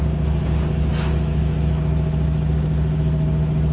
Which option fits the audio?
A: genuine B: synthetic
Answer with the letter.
A